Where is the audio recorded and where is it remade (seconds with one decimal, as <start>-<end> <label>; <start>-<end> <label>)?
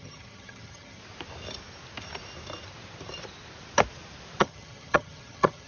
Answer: 0.0-1.0 remade; 1.0-4.4 recorded; 4.4-5.7 remade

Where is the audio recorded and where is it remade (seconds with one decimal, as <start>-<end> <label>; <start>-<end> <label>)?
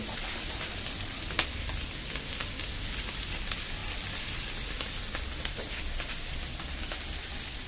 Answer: 0.0-7.7 recorded